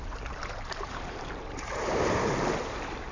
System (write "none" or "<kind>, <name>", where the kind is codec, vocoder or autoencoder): vocoder, BigVGAN v2